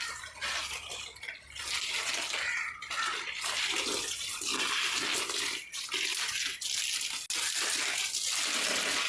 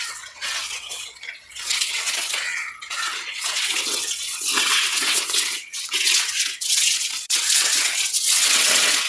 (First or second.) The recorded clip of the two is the first